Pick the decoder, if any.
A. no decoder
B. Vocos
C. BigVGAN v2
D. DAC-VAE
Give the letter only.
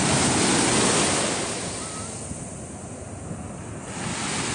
A